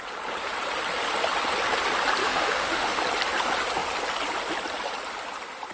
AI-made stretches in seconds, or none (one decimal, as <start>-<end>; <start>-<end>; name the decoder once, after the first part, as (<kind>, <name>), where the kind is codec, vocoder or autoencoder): 2.2-3.0 (autoencoder, DAC-VAE)